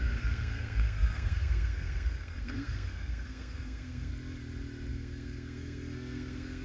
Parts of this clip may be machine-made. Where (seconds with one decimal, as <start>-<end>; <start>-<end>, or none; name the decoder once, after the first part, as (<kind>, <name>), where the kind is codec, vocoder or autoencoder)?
0.0-4.1 (codec, SNAC); 4.9-6.6

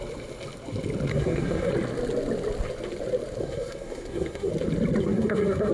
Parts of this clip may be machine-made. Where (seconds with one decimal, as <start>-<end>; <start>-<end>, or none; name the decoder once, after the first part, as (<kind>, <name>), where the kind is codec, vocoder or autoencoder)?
1.1-1.7 (codec, SNAC); 3.4-4.5; 5.0-5.7

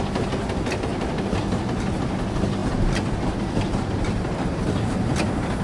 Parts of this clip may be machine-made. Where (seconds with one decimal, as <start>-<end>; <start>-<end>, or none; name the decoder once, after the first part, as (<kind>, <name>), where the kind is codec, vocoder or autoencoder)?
none

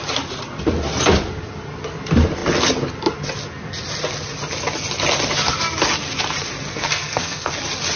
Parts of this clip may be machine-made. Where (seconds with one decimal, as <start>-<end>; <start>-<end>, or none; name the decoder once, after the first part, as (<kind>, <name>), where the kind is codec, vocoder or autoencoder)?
6.7-7.5 (codec, SNAC)

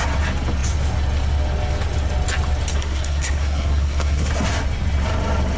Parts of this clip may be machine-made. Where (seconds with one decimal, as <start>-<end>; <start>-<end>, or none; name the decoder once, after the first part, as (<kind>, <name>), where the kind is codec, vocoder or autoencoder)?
2.7-4.3 (codec, SNAC)

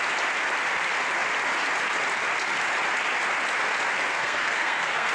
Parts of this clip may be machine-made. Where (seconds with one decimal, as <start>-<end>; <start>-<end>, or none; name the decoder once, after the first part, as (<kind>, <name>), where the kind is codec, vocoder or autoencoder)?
4.1-5.1 (codec, SNAC)